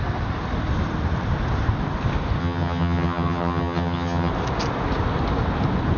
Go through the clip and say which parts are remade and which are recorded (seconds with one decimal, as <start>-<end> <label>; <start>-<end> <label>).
0.0-2.4 recorded; 2.4-4.3 remade; 4.3-6.0 recorded